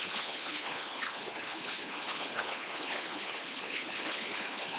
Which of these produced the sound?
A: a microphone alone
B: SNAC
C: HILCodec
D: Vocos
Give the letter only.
C